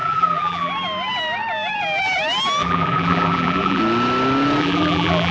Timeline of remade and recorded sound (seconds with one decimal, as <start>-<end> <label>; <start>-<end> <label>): 0.0-0.7 remade; 0.7-2.6 recorded; 2.6-3.8 remade; 3.8-4.6 recorded; 4.6-5.3 remade